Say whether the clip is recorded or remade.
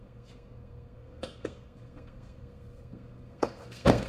remade